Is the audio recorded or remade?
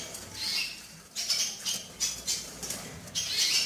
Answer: recorded